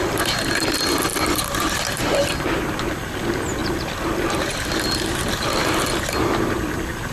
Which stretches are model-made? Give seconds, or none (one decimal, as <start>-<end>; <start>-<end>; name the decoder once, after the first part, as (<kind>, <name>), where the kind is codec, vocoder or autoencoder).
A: 1.1-2.8 (vocoder, BigVGAN v2); 3.6-7.1